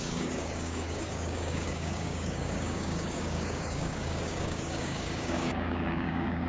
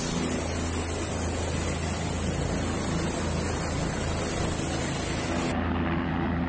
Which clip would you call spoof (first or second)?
first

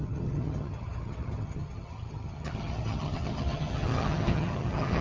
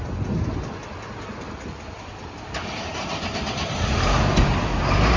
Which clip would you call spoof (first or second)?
first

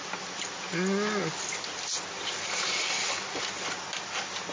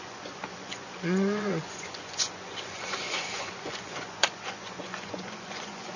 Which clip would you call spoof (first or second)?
second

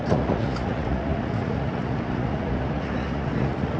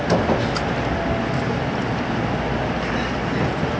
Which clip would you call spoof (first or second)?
first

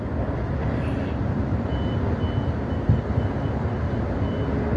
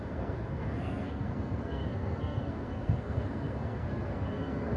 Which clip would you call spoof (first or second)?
second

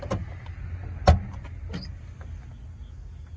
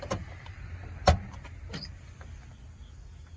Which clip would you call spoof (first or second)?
second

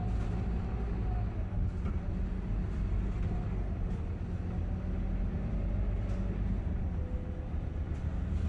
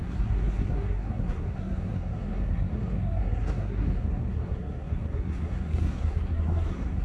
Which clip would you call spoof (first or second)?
second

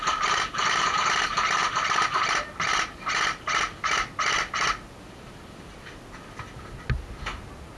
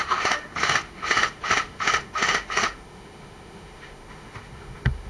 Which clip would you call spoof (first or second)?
second